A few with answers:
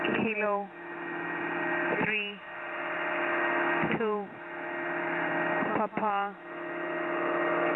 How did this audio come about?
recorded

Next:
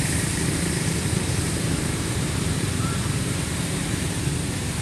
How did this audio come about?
remade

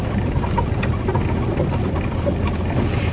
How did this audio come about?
recorded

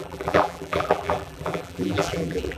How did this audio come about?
remade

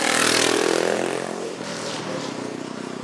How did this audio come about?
remade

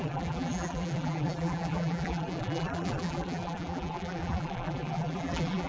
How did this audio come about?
remade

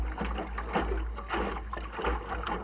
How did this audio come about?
recorded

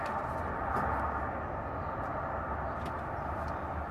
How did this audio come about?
recorded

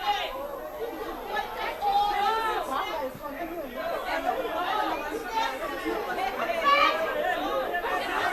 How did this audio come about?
recorded